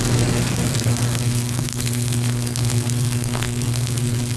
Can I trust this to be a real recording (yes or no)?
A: no